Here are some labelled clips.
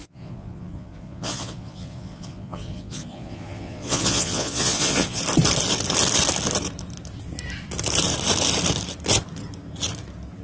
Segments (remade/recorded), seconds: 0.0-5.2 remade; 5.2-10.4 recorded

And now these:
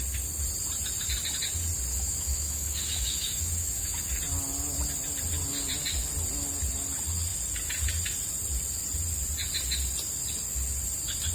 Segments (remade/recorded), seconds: 0.0-1.9 recorded; 1.9-4.1 remade; 4.1-11.3 recorded